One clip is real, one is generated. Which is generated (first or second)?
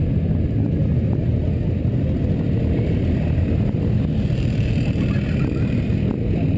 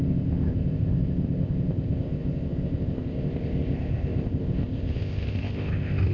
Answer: second